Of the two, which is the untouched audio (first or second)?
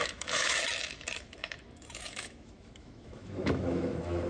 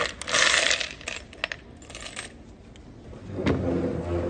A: second